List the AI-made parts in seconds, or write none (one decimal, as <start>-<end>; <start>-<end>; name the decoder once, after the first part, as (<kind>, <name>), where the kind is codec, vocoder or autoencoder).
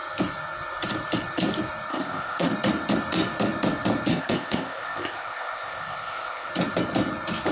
1.9-2.5 (codec, ZipCodec); 4.1-6.5